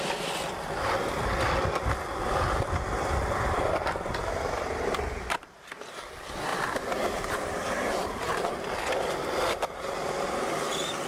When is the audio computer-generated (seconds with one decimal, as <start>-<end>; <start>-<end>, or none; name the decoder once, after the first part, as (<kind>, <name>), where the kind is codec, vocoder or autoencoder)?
4.2-6.1 (vocoder, BigVGAN v2); 6.5-8.5